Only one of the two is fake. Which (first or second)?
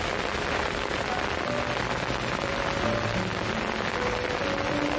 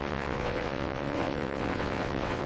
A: second